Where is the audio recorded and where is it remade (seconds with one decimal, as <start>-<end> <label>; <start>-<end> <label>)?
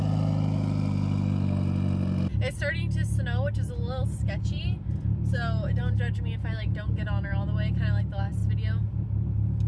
0.0-9.7 recorded